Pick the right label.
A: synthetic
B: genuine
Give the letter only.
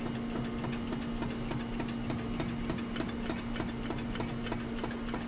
B